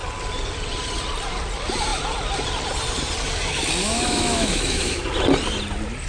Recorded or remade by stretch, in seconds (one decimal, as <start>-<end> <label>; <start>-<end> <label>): 0.0-3.8 recorded; 3.8-5.0 remade; 5.0-6.1 recorded